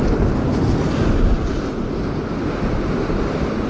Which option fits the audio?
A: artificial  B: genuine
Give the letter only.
B